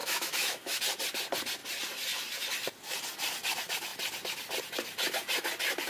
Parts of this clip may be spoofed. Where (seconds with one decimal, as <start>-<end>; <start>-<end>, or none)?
0.0-0.8